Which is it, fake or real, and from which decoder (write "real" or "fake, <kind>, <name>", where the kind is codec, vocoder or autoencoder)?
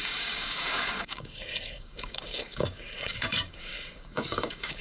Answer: fake, codec, DAC